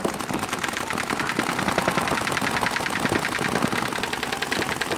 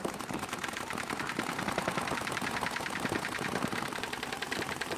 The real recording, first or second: first